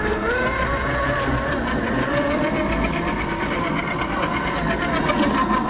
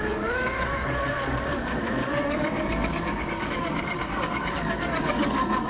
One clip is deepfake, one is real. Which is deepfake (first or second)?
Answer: second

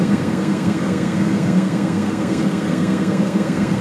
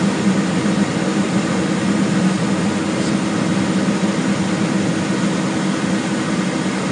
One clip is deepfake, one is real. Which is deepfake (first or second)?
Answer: first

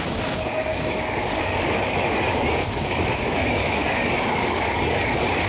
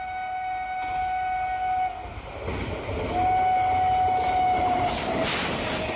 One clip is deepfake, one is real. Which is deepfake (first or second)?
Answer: first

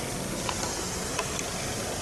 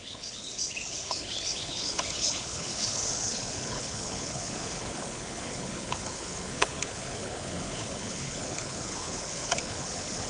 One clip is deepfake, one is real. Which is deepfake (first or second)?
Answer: second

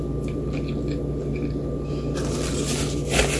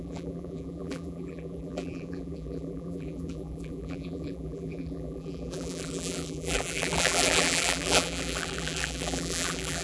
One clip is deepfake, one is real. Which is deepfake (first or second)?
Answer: second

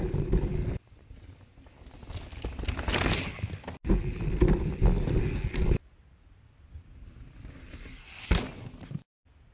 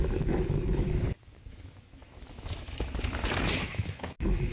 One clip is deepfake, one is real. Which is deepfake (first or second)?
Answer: second